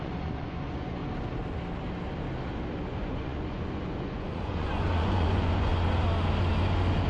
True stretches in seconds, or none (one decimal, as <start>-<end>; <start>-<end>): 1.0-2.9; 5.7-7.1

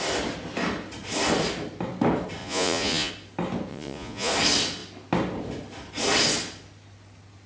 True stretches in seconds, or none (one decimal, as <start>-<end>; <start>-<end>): 0.0-2.4; 3.1-3.7; 4.3-7.5

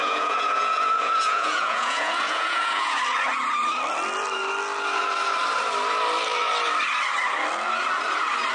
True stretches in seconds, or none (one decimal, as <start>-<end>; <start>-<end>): 3.0-8.5